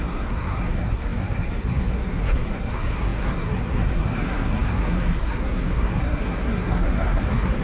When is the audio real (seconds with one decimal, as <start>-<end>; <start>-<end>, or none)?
none